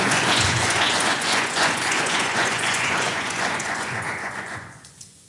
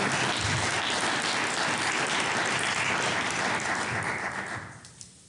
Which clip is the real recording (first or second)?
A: second